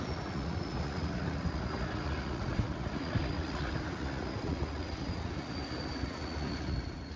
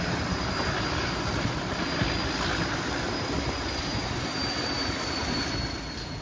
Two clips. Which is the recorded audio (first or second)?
second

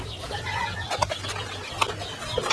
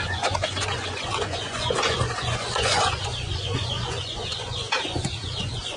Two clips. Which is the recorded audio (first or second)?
first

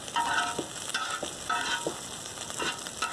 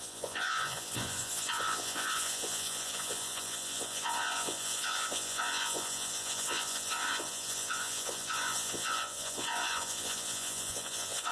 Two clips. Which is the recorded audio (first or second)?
first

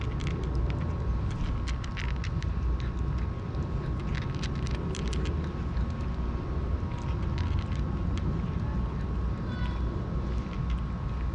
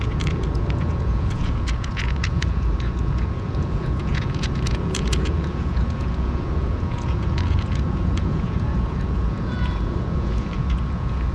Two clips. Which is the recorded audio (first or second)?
first